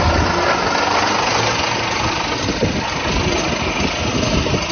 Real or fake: real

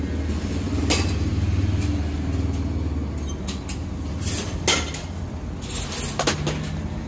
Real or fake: real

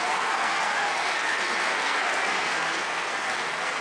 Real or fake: fake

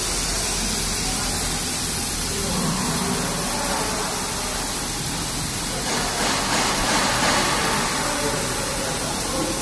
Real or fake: real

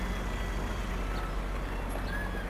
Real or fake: real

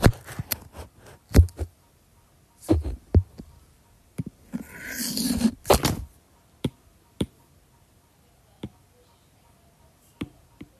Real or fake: real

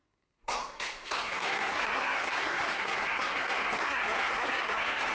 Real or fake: fake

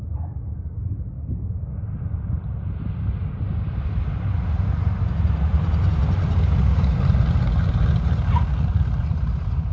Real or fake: real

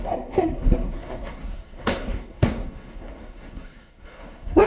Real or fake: fake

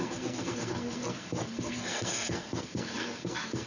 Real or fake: fake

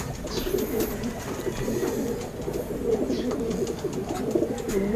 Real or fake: real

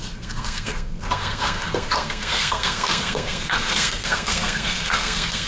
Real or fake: fake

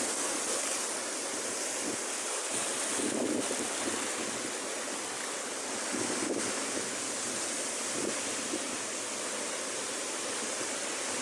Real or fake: real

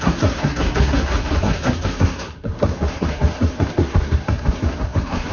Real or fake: fake